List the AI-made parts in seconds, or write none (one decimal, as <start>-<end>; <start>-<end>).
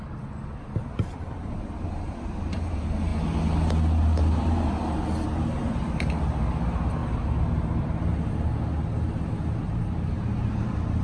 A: 0.0-3.1; 4.3-8.5; 9.0-11.0